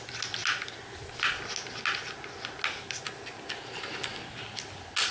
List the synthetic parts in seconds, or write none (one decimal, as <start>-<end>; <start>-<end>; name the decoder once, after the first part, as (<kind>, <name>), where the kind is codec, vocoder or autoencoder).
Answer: none